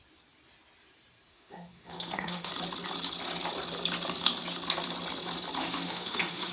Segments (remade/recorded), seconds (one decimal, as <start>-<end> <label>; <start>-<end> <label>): 0.0-1.3 recorded; 1.3-2.5 remade; 2.5-5.6 recorded; 5.6-6.5 remade